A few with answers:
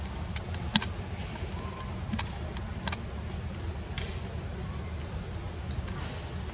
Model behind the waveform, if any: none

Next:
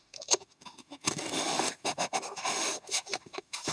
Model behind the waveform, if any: autoencoder, DAC-VAE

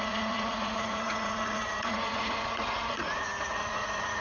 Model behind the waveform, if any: vocoder, Vocos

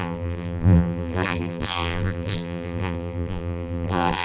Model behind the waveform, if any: vocoder, BigVGAN v2